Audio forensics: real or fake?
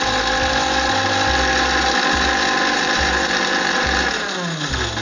real